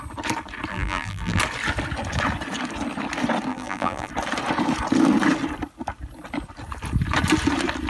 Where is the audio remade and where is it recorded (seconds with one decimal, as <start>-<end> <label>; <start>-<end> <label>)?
0.0-0.7 recorded; 0.7-1.4 remade; 1.4-3.5 recorded; 3.5-4.1 remade; 4.1-7.9 recorded